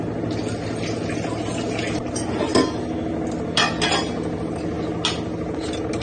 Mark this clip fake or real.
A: real